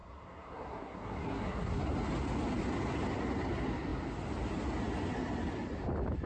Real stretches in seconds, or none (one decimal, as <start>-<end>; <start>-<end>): 1.8-6.3